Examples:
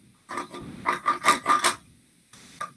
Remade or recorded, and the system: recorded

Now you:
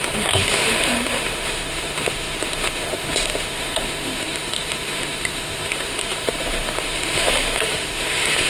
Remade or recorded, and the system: remade, autoencoder, DAC-VAE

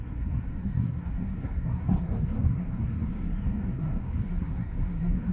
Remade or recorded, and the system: remade, codec, SNAC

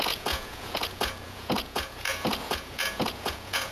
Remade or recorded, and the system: remade, vocoder, Vocos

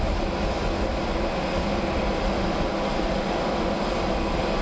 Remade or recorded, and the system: recorded